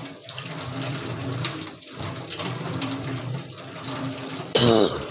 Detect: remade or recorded remade